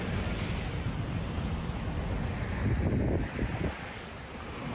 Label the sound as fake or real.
real